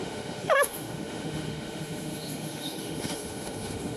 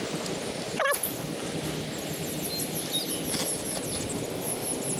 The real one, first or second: second